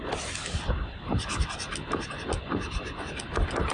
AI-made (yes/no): no